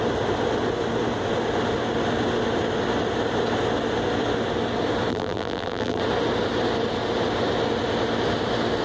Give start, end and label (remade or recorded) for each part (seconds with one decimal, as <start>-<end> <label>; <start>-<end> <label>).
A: 0.0-5.1 recorded; 5.1-6.0 remade; 6.0-8.8 recorded

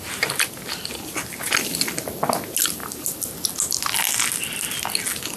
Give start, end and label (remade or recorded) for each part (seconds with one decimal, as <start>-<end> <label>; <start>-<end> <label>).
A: 0.0-5.4 recorded

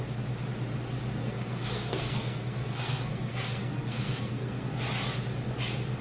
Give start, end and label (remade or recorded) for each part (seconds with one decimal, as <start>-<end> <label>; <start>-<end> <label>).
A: 0.0-1.2 recorded; 1.2-4.8 remade; 4.8-6.0 recorded

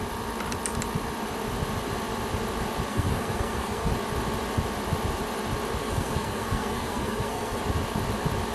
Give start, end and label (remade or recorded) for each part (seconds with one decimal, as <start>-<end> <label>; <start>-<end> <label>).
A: 0.0-2.9 recorded; 2.9-3.9 remade; 3.9-5.8 recorded; 5.8-7.6 remade; 7.6-8.5 recorded

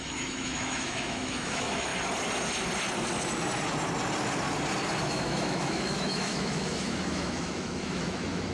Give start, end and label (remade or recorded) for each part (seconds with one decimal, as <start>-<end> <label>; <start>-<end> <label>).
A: 0.0-1.9 remade; 1.9-5.0 recorded; 5.0-8.5 remade

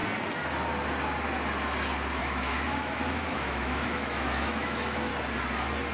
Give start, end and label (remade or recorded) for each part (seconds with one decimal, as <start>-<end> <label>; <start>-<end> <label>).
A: 0.0-2.2 recorded; 2.2-5.1 remade; 5.1-5.9 recorded